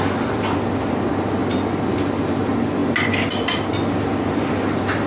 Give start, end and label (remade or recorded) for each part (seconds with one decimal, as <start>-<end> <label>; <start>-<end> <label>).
0.0-5.1 recorded